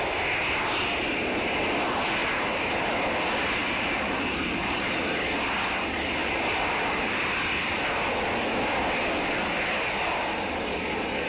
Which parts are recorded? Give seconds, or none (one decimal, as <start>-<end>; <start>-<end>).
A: 0.0-2.2; 2.9-3.6; 4.2-6.2; 7.3-11.3